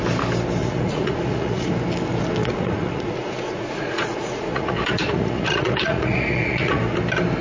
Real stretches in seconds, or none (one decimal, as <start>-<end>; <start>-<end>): 0.0-0.6; 1.7-2.4; 6.8-7.4